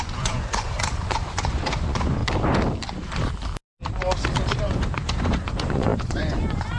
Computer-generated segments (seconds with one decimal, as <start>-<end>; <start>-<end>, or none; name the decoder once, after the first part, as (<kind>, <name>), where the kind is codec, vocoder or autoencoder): 0.0-2.2 (vocoder, Vocos); 4.6-6.8